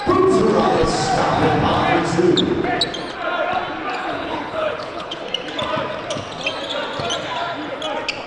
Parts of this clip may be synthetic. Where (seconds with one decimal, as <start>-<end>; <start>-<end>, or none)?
4.0-5.2